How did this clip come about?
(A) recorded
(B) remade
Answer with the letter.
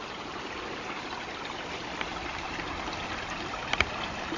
A